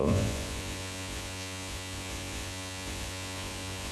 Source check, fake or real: fake